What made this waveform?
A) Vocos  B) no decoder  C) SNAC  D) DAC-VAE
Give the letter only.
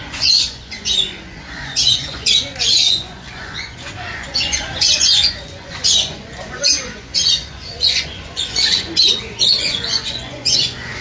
A